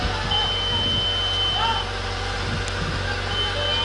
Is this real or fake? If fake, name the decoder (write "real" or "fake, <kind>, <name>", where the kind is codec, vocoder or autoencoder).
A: real